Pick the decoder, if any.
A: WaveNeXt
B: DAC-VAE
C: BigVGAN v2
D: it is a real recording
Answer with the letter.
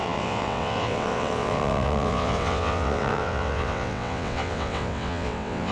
A